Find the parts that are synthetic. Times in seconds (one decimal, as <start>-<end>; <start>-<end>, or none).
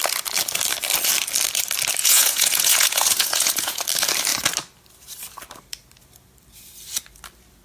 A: 2.0-3.8